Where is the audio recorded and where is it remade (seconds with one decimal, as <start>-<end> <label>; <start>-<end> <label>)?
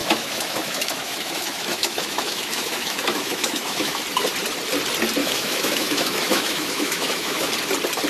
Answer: 0.0-4.0 remade; 4.0-5.2 recorded; 5.2-7.5 remade; 7.5-8.1 recorded